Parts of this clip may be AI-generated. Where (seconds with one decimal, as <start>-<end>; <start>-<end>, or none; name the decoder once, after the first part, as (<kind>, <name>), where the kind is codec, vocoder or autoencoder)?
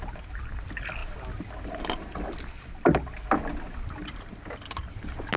none